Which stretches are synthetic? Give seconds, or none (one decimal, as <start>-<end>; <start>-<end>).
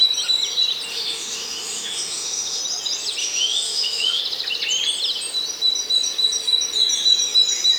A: 0.9-2.6; 3.2-4.2